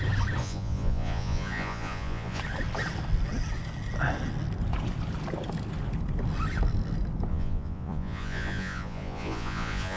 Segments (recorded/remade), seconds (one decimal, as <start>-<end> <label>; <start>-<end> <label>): 0.0-0.4 recorded; 0.4-2.4 remade; 2.4-7.3 recorded; 7.3-10.0 remade